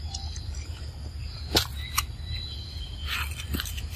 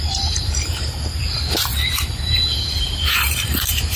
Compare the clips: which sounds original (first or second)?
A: first